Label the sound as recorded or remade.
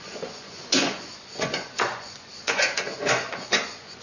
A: remade